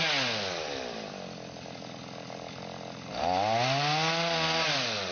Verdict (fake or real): real